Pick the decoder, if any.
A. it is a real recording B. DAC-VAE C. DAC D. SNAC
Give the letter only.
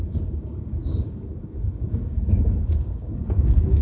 C